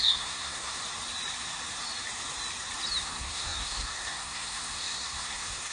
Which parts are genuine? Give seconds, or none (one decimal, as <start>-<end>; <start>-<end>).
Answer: 0.8-3.0